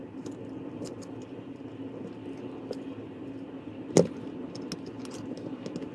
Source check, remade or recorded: recorded